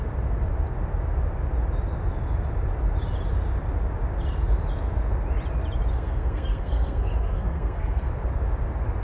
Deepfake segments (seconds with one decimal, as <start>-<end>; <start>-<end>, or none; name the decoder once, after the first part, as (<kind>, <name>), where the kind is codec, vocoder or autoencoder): 5.9-8.1 (codec, SNAC)